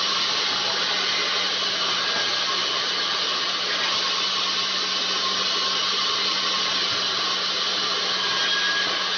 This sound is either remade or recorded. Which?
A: recorded